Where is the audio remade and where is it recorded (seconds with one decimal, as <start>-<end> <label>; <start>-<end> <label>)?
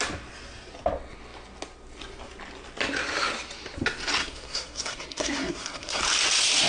0.0-4.2 recorded; 4.2-6.0 remade; 6.0-6.7 recorded